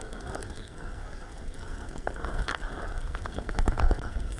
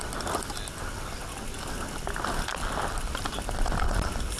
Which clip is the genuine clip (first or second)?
second